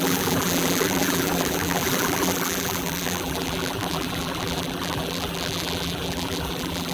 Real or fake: fake